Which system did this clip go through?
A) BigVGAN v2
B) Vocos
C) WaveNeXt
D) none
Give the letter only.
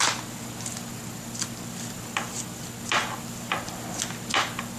D